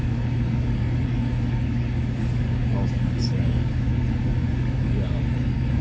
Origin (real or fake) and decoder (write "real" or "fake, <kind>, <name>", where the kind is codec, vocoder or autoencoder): fake, codec, DAC